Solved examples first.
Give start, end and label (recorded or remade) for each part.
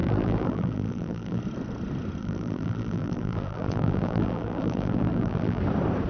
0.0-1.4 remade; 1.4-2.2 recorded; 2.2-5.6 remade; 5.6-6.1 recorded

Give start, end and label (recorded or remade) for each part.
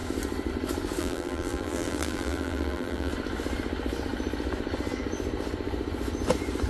0.0-1.0 recorded; 1.0-3.1 remade; 3.1-6.7 recorded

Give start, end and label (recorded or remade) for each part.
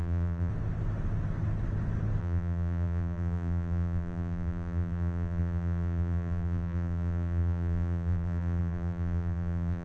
0.0-0.5 remade; 0.5-2.2 recorded; 2.2-9.8 remade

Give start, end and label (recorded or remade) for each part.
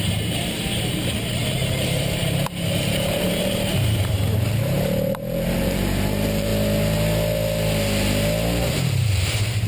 0.0-6.5 remade; 6.5-8.6 recorded; 8.6-9.7 remade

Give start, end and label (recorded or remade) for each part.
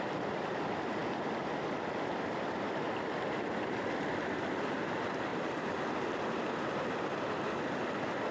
0.0-5.3 recorded; 5.3-7.4 remade; 7.4-8.3 recorded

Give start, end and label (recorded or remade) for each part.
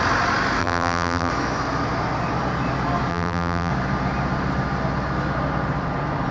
0.0-0.6 recorded; 0.6-1.3 remade; 1.3-3.1 recorded; 3.1-3.7 remade; 3.7-6.3 recorded